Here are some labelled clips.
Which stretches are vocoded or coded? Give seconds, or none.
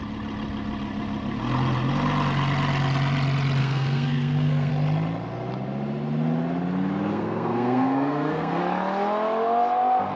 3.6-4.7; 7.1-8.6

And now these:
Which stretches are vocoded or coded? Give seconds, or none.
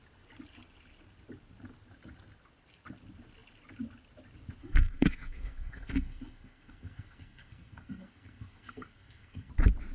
4.6-9.5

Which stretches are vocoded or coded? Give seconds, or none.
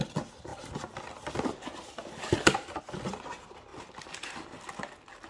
none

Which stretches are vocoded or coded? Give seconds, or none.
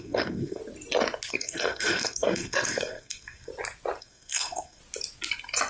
0.0-0.6; 1.3-3.5; 4.0-4.8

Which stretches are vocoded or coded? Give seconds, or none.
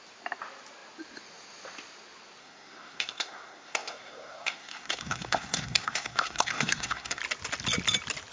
2.4-7.2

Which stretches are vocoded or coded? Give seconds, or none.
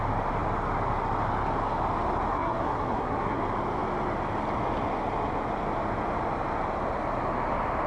2.3-3.4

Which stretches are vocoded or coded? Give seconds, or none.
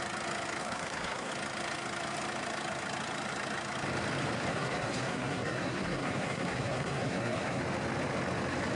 0.6-1.3; 4.5-7.6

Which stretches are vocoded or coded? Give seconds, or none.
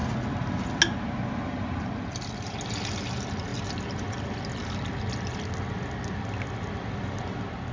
none